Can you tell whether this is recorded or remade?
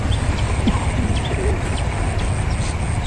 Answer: recorded